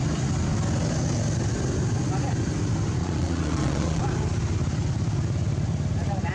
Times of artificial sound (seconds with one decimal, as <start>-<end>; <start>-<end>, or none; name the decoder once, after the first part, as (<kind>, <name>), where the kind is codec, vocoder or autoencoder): 3.0-4.0 (vocoder, Vocos)